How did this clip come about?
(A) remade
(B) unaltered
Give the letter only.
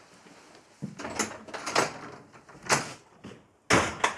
B